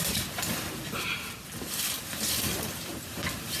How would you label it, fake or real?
real